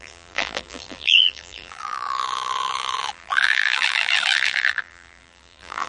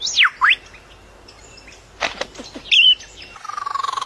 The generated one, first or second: first